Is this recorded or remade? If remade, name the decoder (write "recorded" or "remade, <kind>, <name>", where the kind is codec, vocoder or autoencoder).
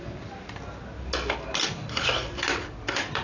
recorded